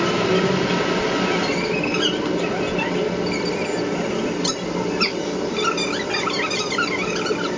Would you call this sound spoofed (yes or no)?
no